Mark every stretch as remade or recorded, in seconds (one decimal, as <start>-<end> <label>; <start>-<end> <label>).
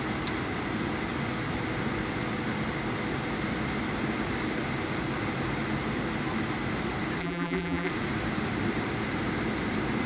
0.0-7.2 recorded; 7.2-7.9 remade; 7.9-10.1 recorded